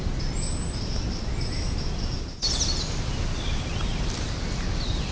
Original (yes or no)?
yes